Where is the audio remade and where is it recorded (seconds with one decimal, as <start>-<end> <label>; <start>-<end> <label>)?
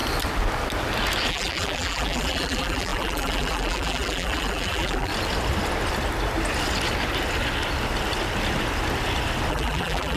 0.0-1.3 recorded; 1.3-5.1 remade; 5.1-9.5 recorded; 9.5-10.2 remade